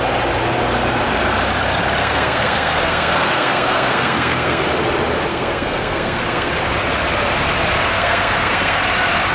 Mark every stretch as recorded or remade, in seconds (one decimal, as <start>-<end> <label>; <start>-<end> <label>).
0.0-2.0 recorded; 2.0-4.6 remade; 4.6-5.3 recorded; 5.3-6.5 remade; 6.5-7.9 recorded; 7.9-8.8 remade; 8.8-9.3 recorded

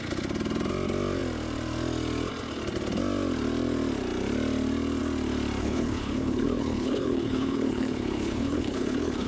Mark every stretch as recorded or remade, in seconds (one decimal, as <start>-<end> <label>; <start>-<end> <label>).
0.0-5.6 recorded; 5.6-9.3 remade

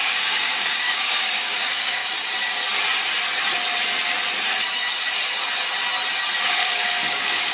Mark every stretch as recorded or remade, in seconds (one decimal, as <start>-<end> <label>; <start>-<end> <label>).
0.0-2.0 remade; 2.0-6.5 recorded; 6.5-7.5 remade

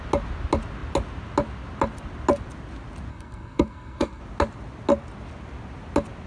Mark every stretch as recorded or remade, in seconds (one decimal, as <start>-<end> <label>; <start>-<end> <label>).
0.0-3.1 recorded; 3.1-4.2 remade; 4.2-6.3 recorded

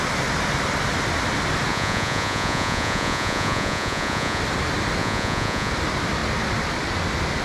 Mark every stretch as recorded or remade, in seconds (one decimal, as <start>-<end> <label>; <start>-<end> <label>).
0.0-1.7 recorded; 1.7-4.4 remade; 4.4-5.0 recorded; 5.0-5.7 remade; 5.7-7.4 recorded

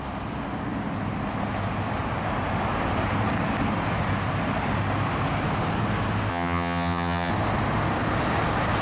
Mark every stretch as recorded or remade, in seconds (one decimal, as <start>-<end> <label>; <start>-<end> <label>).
0.0-6.3 recorded; 6.3-7.3 remade; 7.3-8.8 recorded

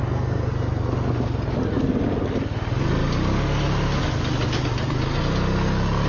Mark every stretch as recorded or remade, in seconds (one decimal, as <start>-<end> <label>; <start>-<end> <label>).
0.0-6.1 recorded